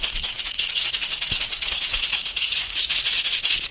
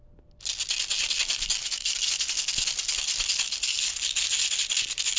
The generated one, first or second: first